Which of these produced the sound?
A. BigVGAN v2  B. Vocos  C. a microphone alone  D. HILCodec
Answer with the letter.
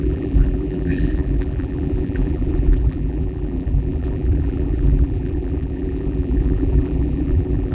A